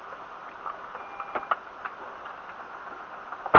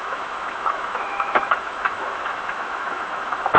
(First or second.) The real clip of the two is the first